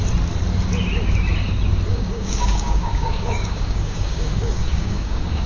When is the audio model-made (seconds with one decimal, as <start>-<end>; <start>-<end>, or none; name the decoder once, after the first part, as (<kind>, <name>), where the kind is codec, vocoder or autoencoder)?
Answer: 1.9-5.5 (codec, DAC)

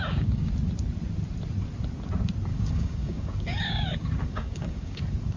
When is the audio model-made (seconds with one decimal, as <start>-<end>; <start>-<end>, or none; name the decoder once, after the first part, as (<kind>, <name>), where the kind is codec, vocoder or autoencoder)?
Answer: 0.0-0.5 (codec, DAC); 2.5-5.0

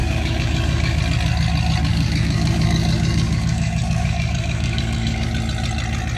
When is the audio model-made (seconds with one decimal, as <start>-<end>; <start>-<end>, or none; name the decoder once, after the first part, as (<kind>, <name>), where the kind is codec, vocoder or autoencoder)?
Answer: 0.0-1.0 (codec, DAC); 1.9-5.3